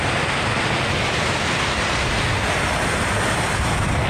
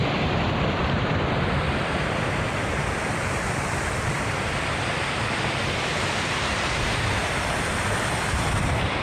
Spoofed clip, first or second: second